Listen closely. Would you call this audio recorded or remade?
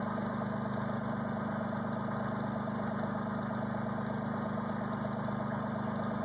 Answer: recorded